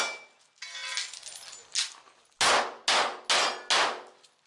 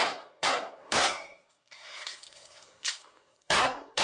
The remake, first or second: second